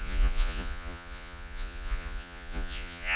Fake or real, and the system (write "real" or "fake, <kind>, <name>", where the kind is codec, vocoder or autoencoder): fake, vocoder, Vocos